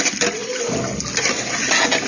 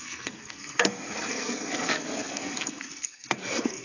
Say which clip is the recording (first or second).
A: first